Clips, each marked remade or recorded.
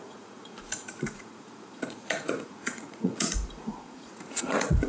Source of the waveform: remade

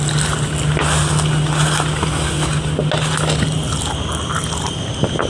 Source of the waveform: recorded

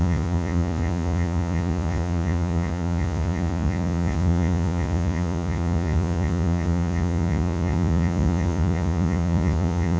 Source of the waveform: remade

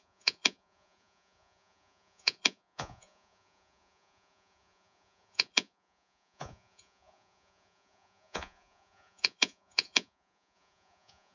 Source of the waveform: remade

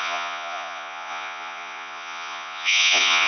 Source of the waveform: remade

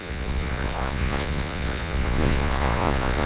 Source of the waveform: remade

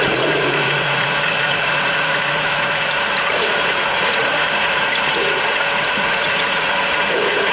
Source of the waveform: remade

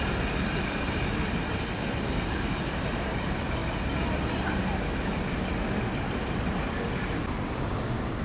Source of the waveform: recorded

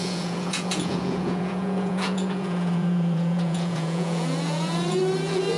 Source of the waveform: remade